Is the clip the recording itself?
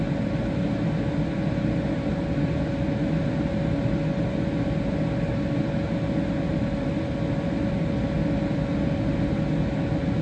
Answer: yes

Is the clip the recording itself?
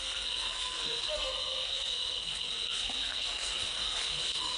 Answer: no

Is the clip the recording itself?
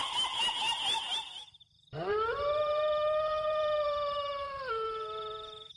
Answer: no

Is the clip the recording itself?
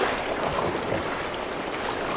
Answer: yes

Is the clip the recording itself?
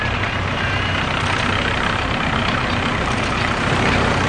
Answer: no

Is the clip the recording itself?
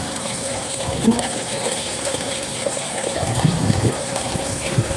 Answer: no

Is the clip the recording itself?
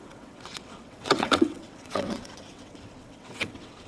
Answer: no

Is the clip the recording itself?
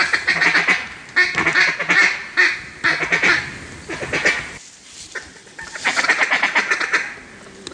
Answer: yes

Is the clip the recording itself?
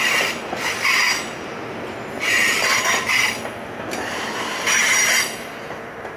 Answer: yes